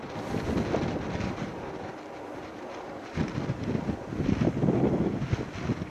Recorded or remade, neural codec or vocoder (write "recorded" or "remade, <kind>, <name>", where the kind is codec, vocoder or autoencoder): recorded